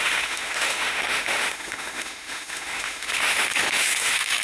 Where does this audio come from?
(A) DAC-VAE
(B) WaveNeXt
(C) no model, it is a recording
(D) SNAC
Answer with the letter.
A